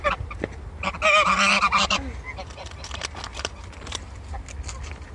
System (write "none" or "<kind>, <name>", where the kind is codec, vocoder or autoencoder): none